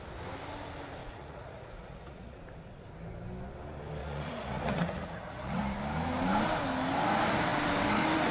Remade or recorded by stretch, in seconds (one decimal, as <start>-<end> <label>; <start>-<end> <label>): 0.0-1.0 recorded; 1.0-2.4 remade; 2.4-4.0 recorded; 4.0-5.6 remade; 5.6-8.3 recorded